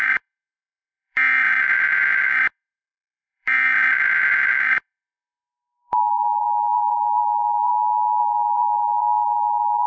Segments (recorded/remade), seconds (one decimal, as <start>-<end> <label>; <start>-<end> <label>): 0.0-7.7 remade; 7.7-8.2 recorded; 8.2-9.9 remade